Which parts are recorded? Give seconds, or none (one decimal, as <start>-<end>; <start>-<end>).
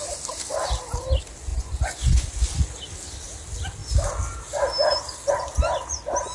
0.0-1.5; 2.3-6.3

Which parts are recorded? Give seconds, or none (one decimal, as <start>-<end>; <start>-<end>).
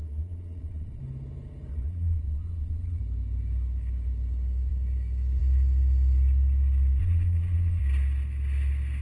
1.0-1.7; 3.0-7.0; 7.8-9.0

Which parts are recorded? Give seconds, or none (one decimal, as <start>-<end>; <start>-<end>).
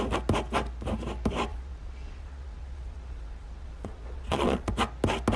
0.0-1.5; 4.7-5.4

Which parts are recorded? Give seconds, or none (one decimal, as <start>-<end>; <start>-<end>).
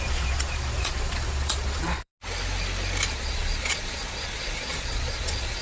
2.1-3.1